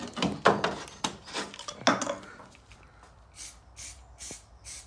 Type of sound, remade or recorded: recorded